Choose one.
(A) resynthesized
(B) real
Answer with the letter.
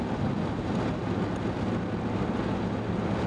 B